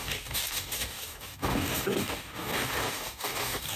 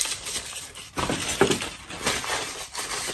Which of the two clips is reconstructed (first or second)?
first